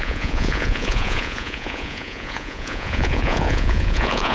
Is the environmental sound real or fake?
fake